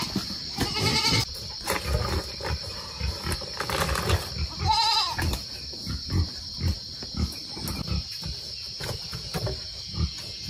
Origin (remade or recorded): recorded